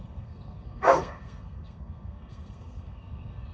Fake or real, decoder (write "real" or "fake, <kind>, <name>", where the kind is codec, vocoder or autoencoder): fake, codec, SNAC